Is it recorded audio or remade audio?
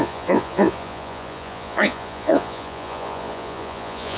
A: remade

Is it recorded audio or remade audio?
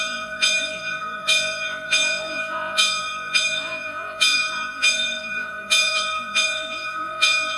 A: remade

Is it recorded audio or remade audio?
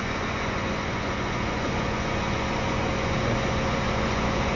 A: remade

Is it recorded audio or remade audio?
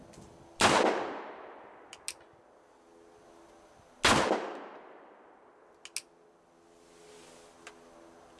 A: recorded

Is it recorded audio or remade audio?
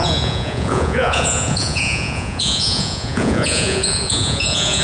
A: remade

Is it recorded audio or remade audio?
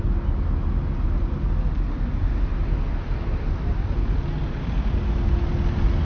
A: recorded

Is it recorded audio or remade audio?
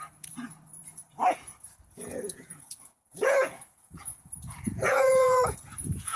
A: remade